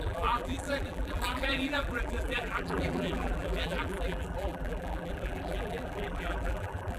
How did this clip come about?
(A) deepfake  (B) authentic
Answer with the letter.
A